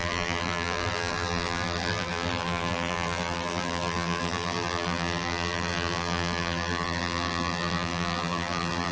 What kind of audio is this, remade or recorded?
remade